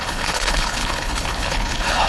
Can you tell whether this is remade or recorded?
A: remade